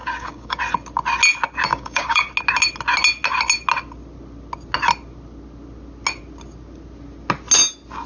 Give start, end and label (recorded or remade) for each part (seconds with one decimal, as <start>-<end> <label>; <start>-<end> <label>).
0.0-0.6 remade; 0.6-1.7 recorded; 1.7-2.3 remade; 2.3-8.1 recorded